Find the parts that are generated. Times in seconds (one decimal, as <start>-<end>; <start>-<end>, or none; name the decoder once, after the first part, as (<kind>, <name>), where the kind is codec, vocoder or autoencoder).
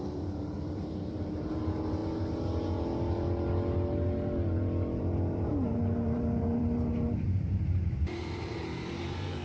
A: 0.0-2.0 (vocoder, BigVGAN v2); 5.0-9.4